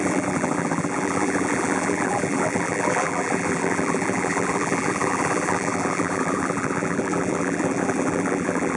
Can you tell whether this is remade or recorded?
remade